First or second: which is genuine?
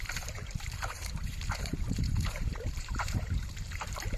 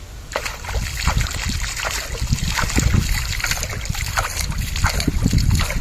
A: second